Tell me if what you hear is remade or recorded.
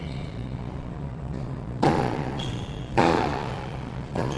remade